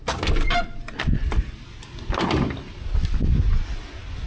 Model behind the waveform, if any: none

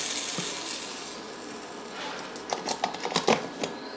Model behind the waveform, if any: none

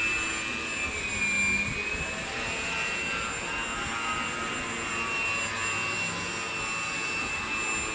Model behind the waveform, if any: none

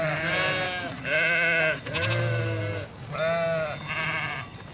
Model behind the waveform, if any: none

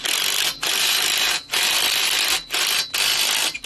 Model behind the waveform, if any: none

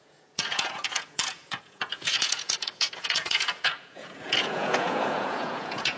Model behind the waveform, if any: vocoder, Vocos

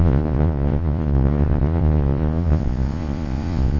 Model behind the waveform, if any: vocoder, Vocos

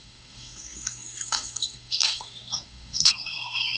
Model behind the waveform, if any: codec, SNAC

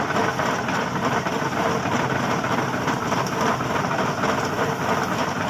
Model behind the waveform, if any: none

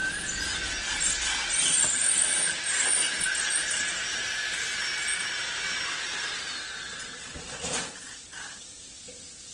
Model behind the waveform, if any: none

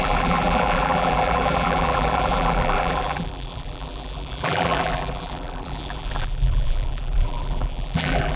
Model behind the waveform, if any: vocoder, BigVGAN v2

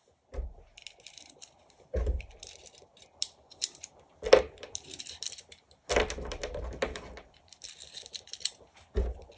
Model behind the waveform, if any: vocoder, BigVGAN v2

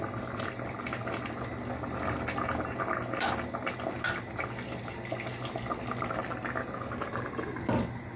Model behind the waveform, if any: none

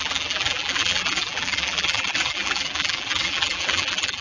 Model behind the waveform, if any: vocoder, BigVGAN v2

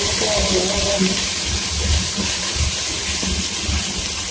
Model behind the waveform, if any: none